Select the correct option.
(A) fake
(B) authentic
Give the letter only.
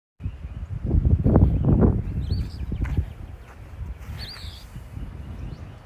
B